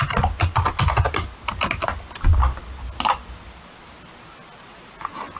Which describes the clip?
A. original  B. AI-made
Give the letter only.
A